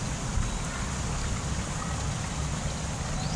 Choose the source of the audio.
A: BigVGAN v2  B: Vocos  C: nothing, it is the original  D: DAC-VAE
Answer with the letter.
C